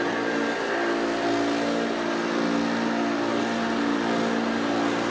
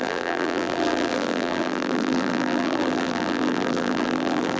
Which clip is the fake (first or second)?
second